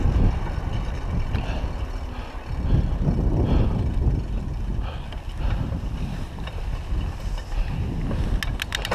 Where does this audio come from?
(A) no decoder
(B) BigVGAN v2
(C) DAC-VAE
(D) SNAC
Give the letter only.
A